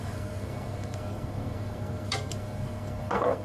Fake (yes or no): yes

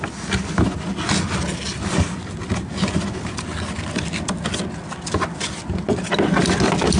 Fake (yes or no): no